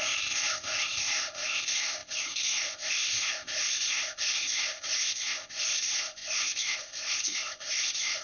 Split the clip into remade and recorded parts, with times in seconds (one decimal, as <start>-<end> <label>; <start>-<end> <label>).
0.0-8.2 remade